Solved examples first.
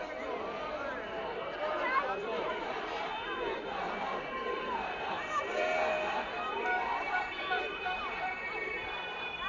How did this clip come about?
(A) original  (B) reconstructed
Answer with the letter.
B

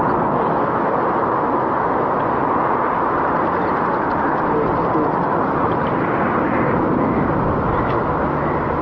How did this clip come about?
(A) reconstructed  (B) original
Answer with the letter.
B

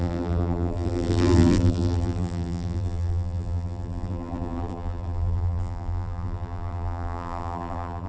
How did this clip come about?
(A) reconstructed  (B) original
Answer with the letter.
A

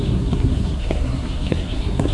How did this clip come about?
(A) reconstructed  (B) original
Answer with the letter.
A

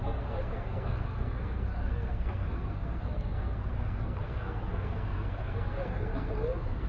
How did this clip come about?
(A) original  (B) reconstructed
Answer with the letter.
B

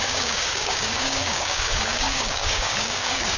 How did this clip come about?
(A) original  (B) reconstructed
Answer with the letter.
B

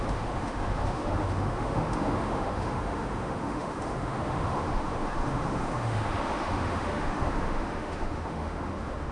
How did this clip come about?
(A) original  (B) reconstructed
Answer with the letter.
B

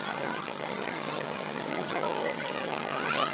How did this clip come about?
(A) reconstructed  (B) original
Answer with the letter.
A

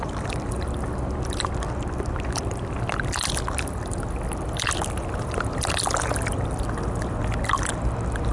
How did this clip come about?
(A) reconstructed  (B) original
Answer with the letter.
B